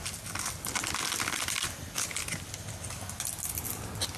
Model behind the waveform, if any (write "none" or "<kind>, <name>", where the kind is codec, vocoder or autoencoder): none